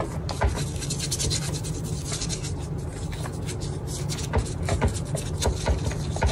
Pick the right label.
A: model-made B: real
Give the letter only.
B